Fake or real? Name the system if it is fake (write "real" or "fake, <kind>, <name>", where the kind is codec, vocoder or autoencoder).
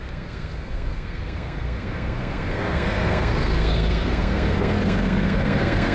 fake, codec, SNAC